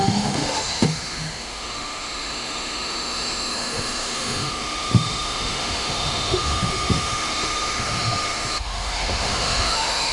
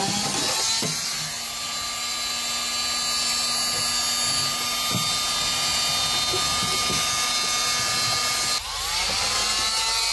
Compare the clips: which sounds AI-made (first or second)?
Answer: first